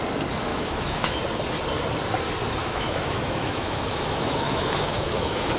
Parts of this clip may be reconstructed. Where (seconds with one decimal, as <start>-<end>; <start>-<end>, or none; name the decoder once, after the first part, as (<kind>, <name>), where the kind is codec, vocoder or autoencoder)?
0.5-1.2 (autoencoder, DAC-VAE); 2.6-5.6

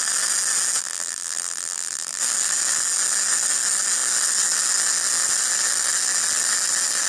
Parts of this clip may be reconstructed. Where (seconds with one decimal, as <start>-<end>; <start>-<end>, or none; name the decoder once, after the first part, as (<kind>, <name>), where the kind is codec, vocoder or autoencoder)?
0.8-2.2 (vocoder, BigVGAN v2)

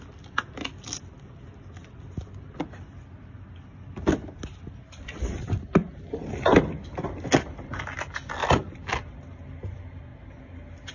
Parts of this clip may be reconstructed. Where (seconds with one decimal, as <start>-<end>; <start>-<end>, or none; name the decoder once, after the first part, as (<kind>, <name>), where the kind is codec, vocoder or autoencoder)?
none